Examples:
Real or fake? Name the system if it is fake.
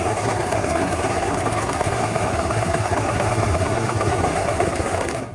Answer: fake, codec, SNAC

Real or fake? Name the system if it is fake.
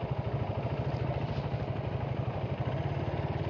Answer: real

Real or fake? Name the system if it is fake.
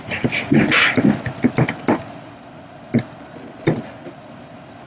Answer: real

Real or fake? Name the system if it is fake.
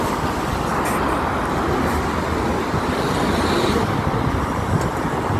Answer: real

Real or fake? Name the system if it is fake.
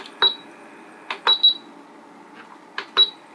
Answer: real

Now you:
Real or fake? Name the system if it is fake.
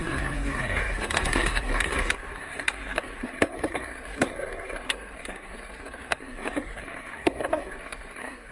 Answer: fake, codec, SNAC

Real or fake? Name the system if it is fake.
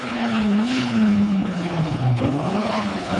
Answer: fake, codec, HILCodec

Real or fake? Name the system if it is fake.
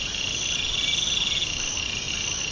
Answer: real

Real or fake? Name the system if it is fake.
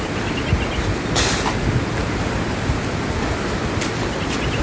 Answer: real